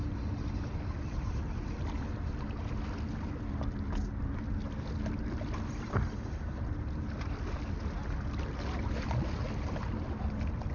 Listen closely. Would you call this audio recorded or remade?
recorded